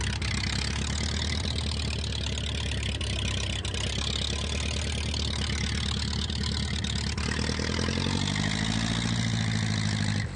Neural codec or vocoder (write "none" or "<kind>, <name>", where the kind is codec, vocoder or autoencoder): none